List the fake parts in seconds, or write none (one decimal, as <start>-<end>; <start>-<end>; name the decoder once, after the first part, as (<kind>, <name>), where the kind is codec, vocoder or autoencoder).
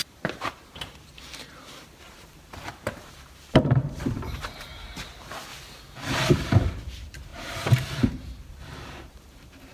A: 0.0-5.5 (vocoder, BigVGAN v2); 6.3-9.7